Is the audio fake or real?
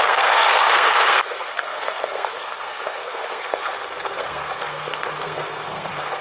fake